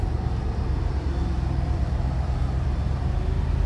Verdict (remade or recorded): recorded